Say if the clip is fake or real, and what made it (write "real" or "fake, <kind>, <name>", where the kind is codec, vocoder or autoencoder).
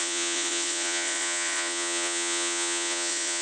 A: fake, vocoder, Vocos